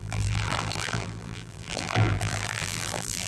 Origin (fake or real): fake